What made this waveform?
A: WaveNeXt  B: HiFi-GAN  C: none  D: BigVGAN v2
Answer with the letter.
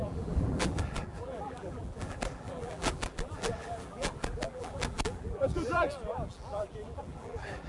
D